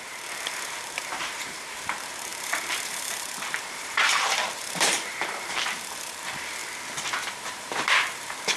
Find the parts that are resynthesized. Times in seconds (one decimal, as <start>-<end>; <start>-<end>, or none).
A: 0.0-6.6; 7.3-8.6